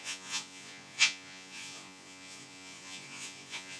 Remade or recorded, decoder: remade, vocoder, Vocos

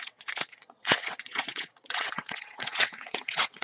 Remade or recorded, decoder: remade, vocoder, WaveNeXt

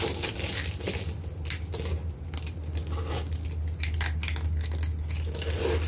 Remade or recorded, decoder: recorded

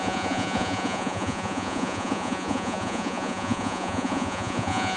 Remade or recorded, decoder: remade, vocoder, Vocos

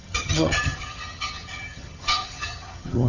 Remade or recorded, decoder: remade, vocoder, HiFi-GAN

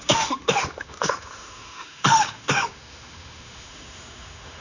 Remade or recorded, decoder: remade, autoencoder, DAC-VAE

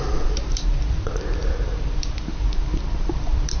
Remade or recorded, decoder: remade, vocoder, BigVGAN v2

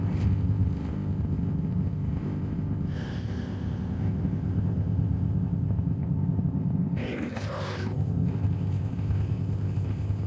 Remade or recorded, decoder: remade, codec, ZipCodec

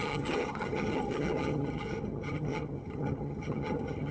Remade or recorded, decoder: remade, vocoder, HiFi-GAN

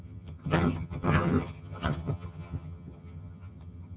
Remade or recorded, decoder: remade, vocoder, HiFi-GAN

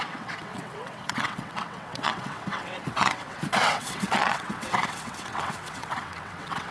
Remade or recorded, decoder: remade, vocoder, WaveNeXt